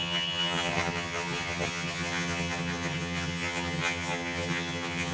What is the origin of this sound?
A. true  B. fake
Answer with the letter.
B